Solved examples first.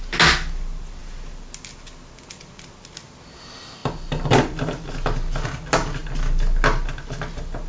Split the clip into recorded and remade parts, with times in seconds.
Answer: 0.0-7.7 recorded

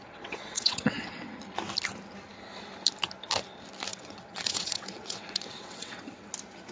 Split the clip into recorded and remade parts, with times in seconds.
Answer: 0.0-1.4 remade; 1.4-3.9 recorded; 3.9-6.3 remade; 6.3-6.7 recorded

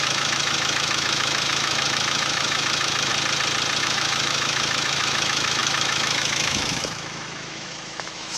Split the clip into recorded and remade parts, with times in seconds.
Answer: 0.0-3.1 remade; 3.1-3.8 recorded; 3.8-8.4 remade

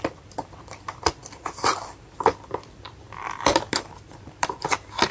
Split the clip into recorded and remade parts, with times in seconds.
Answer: 0.0-5.1 remade

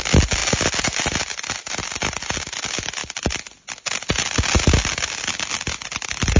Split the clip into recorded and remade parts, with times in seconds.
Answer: 0.0-6.4 recorded

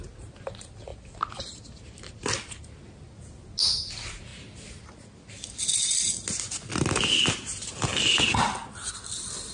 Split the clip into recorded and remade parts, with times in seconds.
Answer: 0.0-9.5 recorded

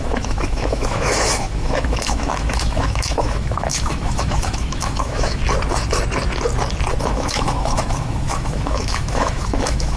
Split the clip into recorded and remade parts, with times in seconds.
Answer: 0.0-5.4 remade; 5.4-7.0 recorded; 7.0-10.0 remade